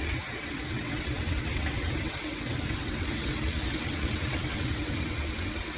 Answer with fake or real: fake